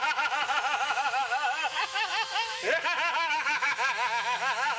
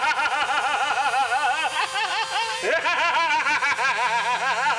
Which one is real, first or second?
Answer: second